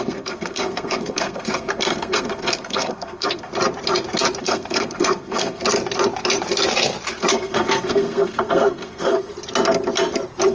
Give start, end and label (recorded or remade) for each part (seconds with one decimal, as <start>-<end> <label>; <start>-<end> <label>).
0.0-3.5 remade; 3.5-4.4 recorded; 4.4-5.6 remade; 5.6-7.3 recorded; 7.3-9.3 remade; 9.3-10.5 recorded